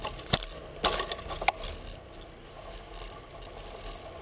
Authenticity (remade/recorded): recorded